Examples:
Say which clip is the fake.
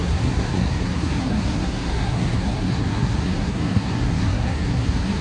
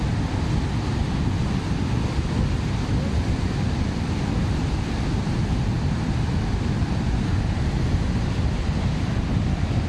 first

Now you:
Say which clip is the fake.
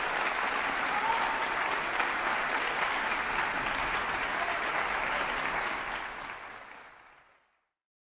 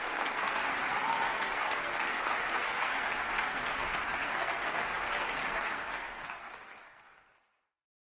second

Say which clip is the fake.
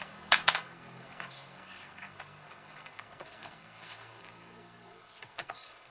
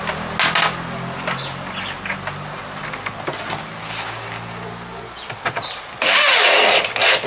first